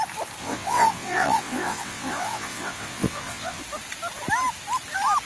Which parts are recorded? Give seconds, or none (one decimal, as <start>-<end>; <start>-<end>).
0.0-0.4; 3.6-5.3